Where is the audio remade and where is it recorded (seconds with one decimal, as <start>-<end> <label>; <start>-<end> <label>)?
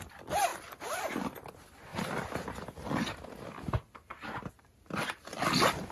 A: 0.0-0.5 recorded; 0.5-1.0 remade; 1.0-1.9 recorded; 1.9-2.4 remade; 2.4-5.9 recorded